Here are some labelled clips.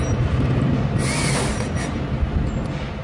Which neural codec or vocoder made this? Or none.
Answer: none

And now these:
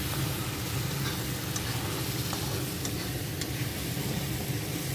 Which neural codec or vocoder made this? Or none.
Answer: vocoder, BigVGAN v2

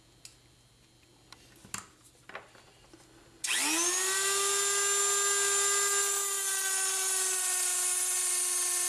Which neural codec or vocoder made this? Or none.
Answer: none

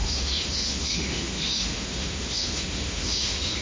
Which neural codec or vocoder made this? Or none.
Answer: autoencoder, DAC-VAE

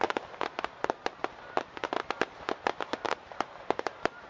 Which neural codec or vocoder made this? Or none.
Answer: none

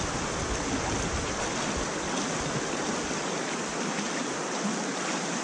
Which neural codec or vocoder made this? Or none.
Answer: none